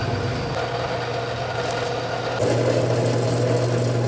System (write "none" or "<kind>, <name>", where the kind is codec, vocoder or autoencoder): none